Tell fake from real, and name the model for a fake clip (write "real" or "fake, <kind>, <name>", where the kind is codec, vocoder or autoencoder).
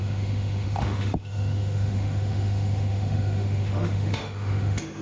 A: fake, autoencoder, DAC-VAE